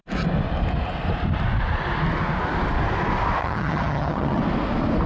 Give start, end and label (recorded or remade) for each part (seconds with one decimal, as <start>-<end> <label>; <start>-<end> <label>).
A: 0.0-3.4 recorded; 3.4-4.4 remade; 4.4-5.1 recorded